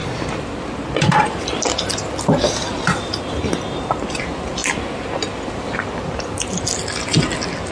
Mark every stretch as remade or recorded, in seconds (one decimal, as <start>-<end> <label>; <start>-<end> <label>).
0.0-7.7 recorded

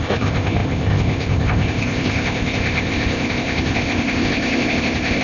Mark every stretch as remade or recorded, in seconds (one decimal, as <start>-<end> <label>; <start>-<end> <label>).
0.0-5.2 remade

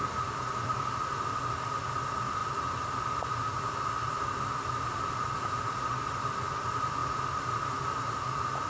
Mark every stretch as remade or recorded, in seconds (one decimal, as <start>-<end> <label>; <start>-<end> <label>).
0.0-8.7 recorded